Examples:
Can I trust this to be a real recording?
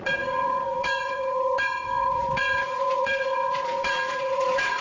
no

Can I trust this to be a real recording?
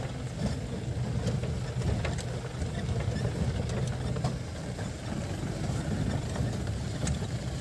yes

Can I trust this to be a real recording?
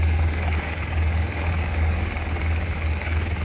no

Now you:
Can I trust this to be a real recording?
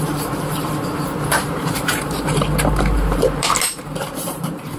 no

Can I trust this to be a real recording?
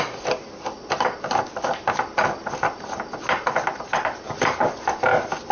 yes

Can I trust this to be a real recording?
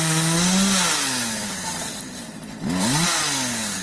yes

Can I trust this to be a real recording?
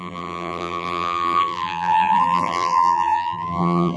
no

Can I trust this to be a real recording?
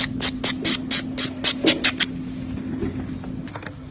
yes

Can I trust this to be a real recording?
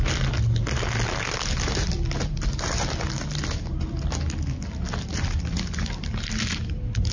yes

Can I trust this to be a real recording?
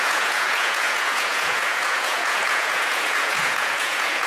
no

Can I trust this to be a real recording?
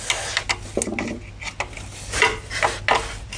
yes